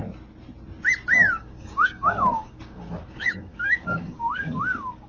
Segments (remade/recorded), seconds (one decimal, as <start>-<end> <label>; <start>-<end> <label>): 0.0-1.4 recorded; 1.4-5.1 remade